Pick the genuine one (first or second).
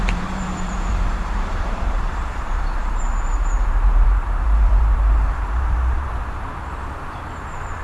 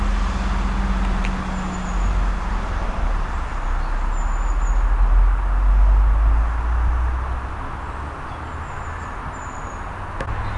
second